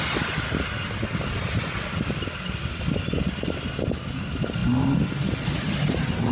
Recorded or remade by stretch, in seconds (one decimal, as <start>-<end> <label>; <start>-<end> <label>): 0.0-6.3 recorded